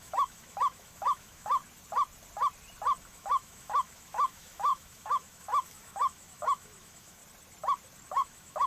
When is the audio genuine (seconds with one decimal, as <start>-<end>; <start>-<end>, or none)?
1.6-3.0; 7.2-8.1